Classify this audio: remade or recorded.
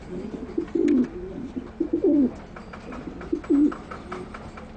recorded